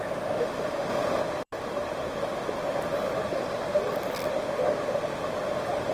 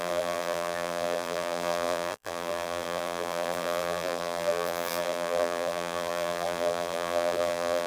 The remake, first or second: second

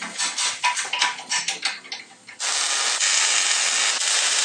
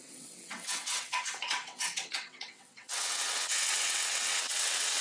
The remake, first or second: second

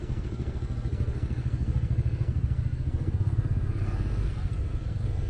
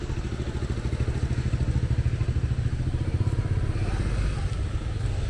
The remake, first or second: first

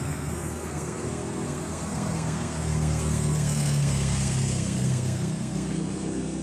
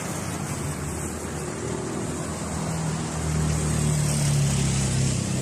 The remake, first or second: first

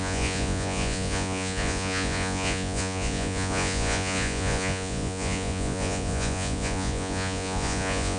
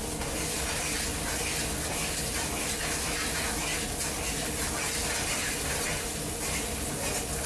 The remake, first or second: first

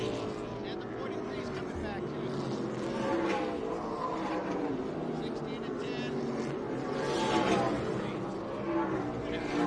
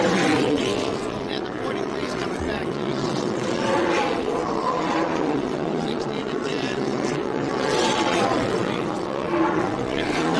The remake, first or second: second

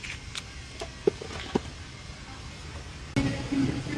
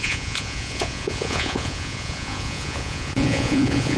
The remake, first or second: second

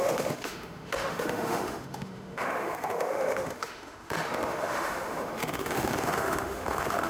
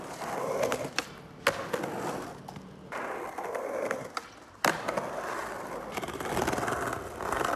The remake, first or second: first